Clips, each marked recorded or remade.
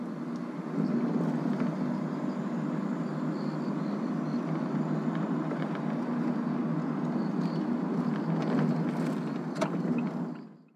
recorded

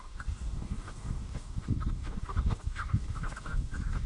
remade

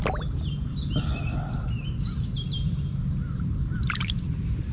recorded